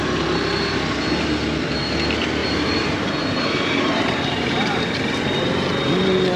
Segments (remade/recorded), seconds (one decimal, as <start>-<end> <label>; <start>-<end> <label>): 0.0-2.4 recorded; 2.4-4.8 remade; 4.8-6.4 recorded